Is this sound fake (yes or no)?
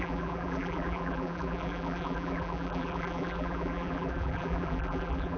yes